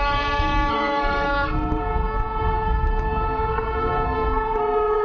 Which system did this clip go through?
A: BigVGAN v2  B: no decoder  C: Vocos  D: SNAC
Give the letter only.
D